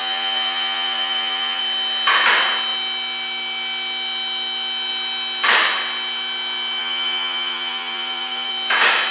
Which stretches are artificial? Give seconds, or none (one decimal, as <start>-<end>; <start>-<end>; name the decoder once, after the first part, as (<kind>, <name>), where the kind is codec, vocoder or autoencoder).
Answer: 0.0-1.6 (vocoder, BigVGAN v2); 6.8-8.5